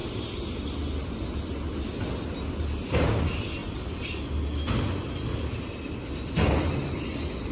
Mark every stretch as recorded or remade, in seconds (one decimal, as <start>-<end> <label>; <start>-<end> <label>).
0.0-7.5 recorded